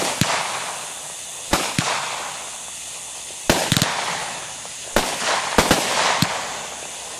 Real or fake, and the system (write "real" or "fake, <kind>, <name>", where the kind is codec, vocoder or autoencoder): real